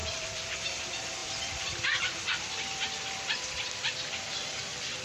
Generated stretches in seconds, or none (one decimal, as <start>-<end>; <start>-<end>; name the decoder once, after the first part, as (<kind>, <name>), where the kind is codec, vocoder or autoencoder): 0.0-0.6 (vocoder, BigVGAN v2); 1.2-4.2